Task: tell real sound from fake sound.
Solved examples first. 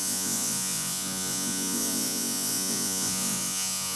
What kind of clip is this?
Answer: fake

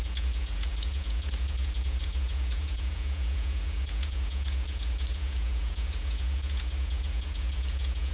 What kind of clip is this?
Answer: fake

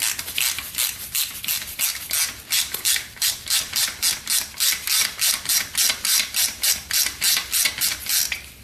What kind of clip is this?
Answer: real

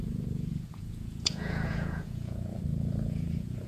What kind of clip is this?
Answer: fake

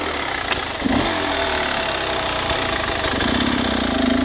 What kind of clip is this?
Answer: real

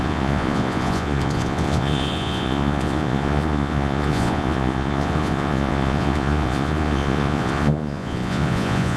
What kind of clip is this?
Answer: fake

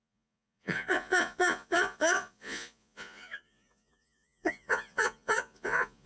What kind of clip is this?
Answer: fake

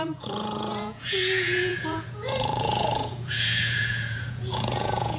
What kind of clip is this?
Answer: fake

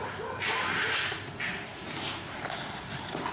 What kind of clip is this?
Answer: real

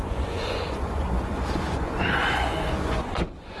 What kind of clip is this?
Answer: fake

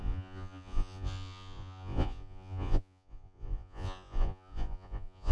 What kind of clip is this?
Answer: fake